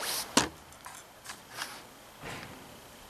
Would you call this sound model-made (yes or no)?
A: no